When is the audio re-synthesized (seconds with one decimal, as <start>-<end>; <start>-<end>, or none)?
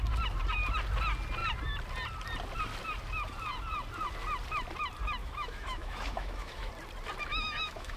5.2-6.7; 7.3-8.0